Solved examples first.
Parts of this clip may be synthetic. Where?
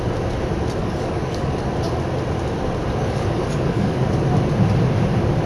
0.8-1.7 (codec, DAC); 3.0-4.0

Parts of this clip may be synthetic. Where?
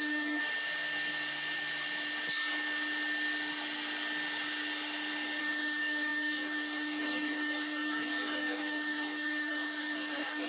0.0-0.4 (codec, DAC); 5.4-10.5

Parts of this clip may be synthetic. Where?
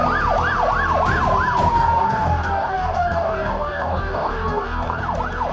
1.7-5.0 (codec, DAC)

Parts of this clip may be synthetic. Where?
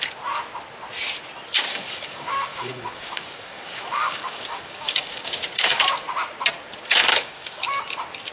1.7-5.8 (codec, DAC); 7.1-7.6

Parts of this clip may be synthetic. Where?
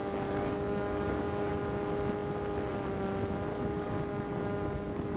0.0-1.5 (codec, DAC); 3.5-5.2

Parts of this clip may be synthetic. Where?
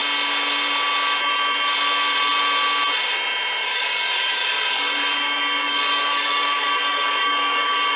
3.6-8.0 (codec, DAC)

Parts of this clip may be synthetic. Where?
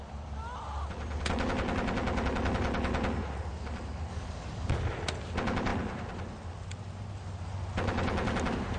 4.1-4.7 (codec, DAC)